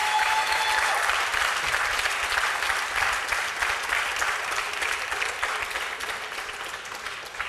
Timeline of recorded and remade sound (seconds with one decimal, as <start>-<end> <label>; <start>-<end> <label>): 0.0-0.6 remade; 0.6-7.5 recorded

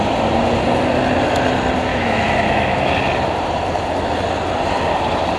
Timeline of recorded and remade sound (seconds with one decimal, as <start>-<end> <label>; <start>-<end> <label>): 0.0-1.9 recorded; 1.9-2.9 remade; 2.9-5.4 recorded

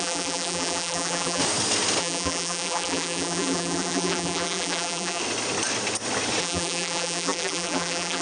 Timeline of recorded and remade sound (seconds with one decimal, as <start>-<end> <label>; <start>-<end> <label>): 0.0-1.4 remade; 1.4-2.0 recorded; 2.0-5.2 remade; 5.2-6.4 recorded; 6.4-8.2 remade

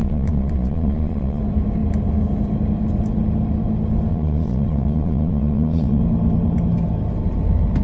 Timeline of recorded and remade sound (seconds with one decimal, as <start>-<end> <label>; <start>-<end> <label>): 0.0-1.4 remade; 1.4-4.1 recorded; 4.1-6.0 remade; 6.0-7.8 recorded

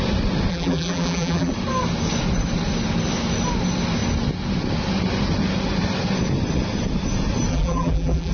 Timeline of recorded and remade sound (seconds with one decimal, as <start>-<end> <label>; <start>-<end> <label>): 0.0-0.5 recorded; 0.5-1.5 remade; 1.5-7.5 recorded; 7.5-8.3 remade

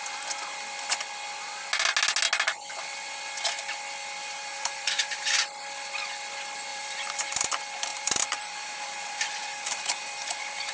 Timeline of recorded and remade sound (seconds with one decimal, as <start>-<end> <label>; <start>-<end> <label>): 0.0-4.2 recorded; 4.2-5.3 remade; 5.3-6.7 recorded; 6.7-7.5 remade; 7.5-7.9 recorded; 7.9-10.7 remade

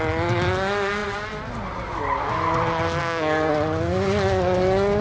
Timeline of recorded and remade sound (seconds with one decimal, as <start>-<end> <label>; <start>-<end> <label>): 0.0-3.0 recorded; 3.0-3.5 remade; 3.5-5.0 recorded